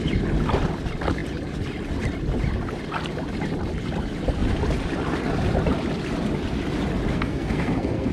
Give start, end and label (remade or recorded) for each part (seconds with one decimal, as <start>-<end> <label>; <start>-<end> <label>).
0.0-7.1 recorded; 7.1-8.1 remade